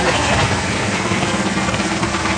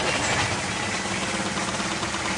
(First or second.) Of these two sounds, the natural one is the second